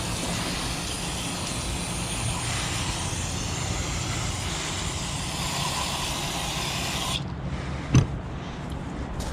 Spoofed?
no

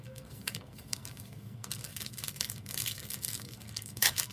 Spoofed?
yes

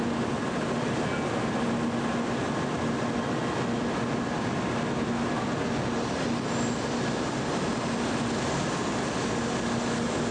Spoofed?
no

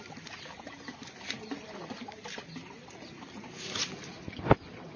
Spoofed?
no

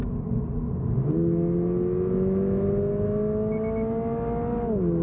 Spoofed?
no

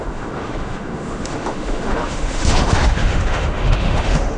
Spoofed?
yes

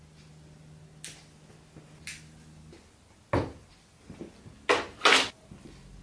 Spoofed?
no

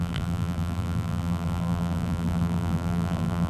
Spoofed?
yes